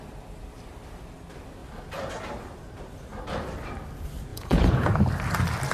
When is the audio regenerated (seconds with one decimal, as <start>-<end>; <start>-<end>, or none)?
4.3-4.9